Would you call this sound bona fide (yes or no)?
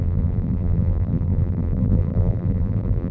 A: no